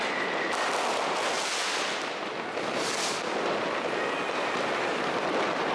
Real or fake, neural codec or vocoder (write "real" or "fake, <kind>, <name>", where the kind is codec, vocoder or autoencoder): real